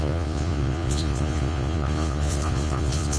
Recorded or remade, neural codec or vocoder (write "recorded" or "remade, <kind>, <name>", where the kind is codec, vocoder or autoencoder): remade, vocoder, Vocos